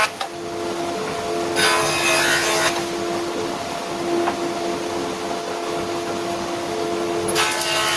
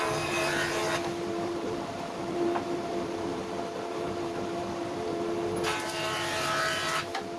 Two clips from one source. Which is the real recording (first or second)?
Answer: first